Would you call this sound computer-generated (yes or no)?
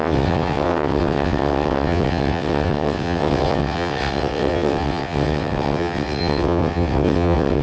yes